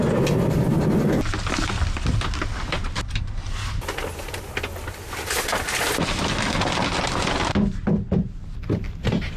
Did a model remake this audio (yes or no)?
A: no